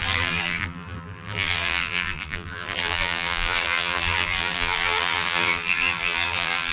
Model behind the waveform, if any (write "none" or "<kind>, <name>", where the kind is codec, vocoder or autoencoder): vocoder, BigVGAN v2